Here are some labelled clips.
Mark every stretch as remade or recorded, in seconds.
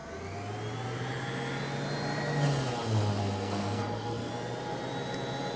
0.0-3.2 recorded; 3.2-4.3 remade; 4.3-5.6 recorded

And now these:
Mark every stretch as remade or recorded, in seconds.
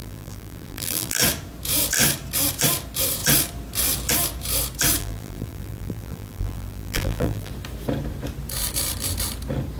0.0-1.2 remade; 1.2-5.0 recorded; 5.0-7.5 remade; 7.5-9.8 recorded